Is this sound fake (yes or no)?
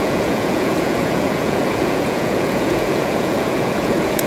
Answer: yes